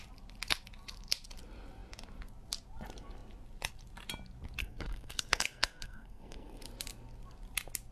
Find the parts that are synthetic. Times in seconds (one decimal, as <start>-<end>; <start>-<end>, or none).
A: 4.6-6.6